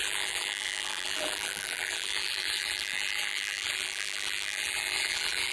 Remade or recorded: remade